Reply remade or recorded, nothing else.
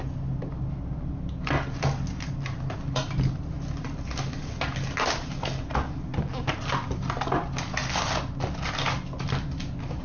recorded